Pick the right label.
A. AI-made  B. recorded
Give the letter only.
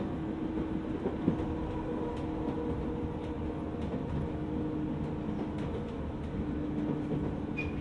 B